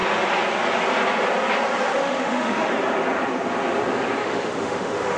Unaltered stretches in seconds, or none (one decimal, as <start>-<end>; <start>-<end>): 0.0-1.9; 2.7-4.2